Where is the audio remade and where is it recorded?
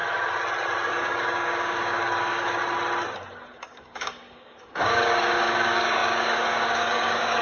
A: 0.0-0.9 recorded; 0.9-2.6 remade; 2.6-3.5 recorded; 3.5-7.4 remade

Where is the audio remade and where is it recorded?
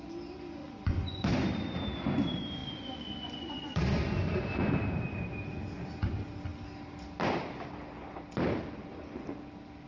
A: 0.0-0.6 recorded; 0.6-1.3 remade; 1.3-2.6 recorded; 2.6-3.8 remade; 3.8-9.9 recorded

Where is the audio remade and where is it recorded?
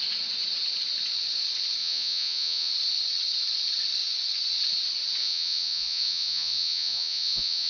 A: 0.0-1.8 recorded; 1.8-2.7 remade; 2.7-5.2 recorded; 5.2-7.7 remade